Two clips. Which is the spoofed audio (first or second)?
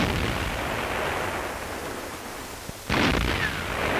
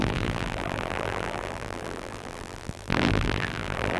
second